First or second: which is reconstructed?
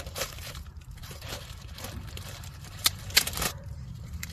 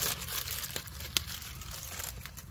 first